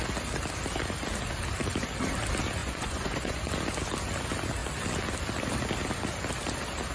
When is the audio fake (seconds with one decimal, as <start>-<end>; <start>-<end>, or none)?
2.6-3.5